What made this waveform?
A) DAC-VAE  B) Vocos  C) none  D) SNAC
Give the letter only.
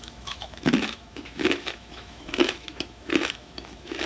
A